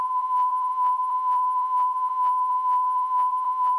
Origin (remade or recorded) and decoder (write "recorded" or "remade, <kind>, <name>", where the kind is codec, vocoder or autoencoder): remade, vocoder, BigVGAN v2